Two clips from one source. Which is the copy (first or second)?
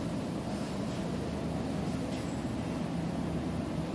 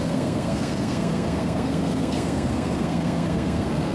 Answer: second